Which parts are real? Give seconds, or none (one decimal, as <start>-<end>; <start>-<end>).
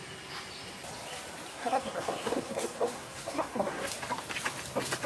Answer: 0.0-1.5; 3.9-5.1